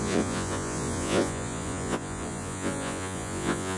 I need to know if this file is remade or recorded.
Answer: remade